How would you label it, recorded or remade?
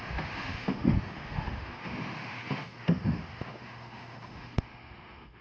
remade